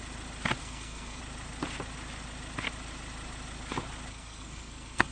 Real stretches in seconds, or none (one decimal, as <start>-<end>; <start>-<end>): 0.0-0.6; 1.2-4.1